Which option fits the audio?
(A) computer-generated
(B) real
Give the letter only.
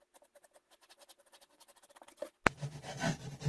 B